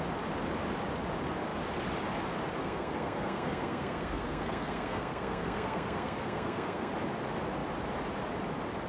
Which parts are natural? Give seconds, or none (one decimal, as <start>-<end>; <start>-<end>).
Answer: 0.0-2.6; 6.9-8.9